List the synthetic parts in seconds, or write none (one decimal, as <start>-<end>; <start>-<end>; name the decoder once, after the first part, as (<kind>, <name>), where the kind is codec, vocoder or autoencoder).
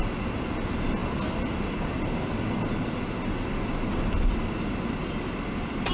none